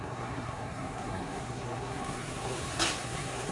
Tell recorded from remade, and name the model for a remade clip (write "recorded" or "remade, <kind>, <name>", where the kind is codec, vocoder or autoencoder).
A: remade, codec, SNAC